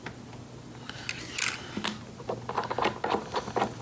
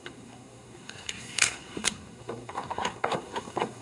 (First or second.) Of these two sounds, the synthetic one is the second